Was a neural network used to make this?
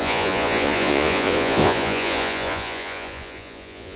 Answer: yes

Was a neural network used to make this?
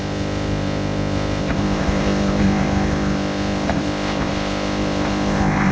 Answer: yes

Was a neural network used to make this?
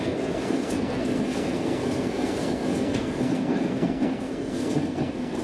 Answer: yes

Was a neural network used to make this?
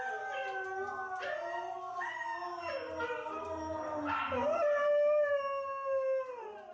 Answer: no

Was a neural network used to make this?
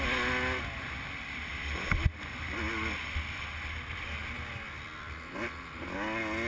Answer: no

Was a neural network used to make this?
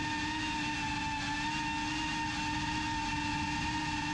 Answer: no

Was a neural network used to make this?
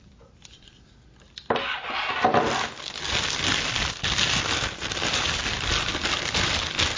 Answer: no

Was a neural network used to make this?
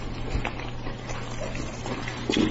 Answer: no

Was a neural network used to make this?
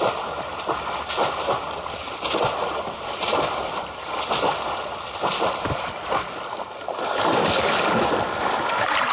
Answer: yes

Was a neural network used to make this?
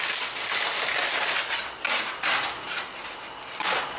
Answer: no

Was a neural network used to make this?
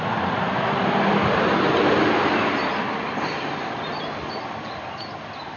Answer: no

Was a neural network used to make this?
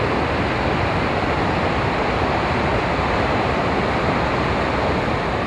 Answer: no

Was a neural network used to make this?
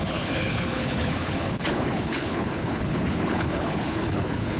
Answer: yes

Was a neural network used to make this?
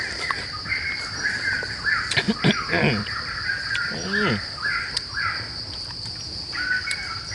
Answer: no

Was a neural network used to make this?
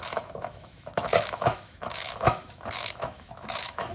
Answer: yes